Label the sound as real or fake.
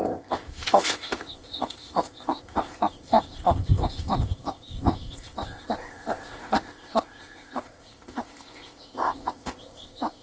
fake